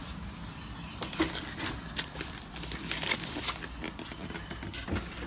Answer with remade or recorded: recorded